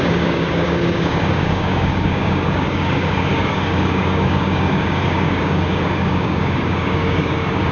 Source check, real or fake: fake